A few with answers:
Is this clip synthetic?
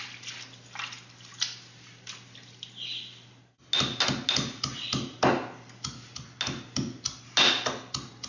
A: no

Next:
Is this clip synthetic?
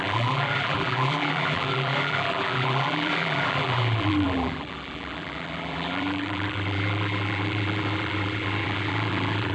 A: yes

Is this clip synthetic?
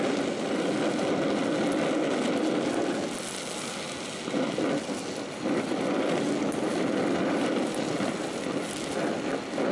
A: no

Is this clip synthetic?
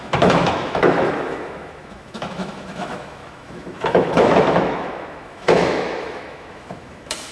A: yes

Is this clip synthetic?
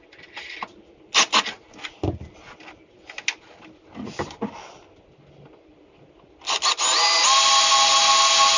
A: no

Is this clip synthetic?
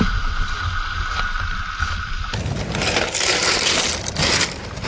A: no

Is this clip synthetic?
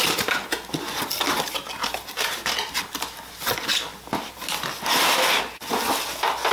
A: no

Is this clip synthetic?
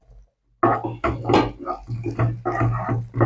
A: no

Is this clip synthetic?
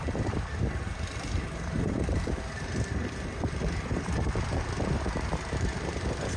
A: yes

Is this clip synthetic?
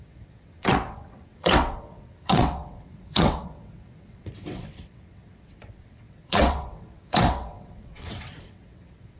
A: yes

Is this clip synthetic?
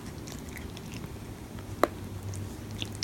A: no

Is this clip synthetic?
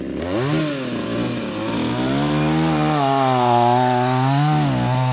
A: no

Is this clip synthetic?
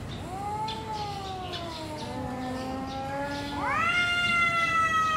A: no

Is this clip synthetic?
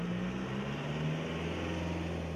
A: no